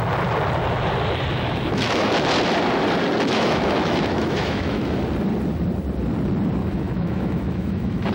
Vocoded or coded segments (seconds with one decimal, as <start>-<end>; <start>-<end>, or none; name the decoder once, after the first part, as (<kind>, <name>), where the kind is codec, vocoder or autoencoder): 1.3-2.1 (autoencoder, DAC-VAE); 3.3-5.0; 6.6-8.1